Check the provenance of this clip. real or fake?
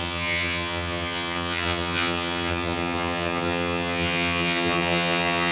fake